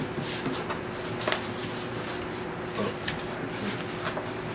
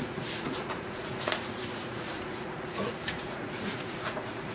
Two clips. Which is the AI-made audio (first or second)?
second